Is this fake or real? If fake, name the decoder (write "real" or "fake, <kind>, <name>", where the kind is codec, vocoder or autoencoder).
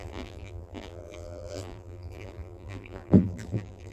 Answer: fake, vocoder, BigVGAN v2